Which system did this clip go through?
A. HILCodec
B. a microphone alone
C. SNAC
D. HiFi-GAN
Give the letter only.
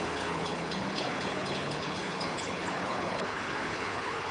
A